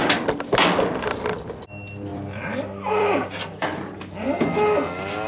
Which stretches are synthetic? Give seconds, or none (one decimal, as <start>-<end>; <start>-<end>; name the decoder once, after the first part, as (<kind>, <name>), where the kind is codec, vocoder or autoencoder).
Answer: 2.1-3.6 (vocoder, BigVGAN v2)